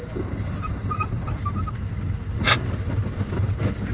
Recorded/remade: recorded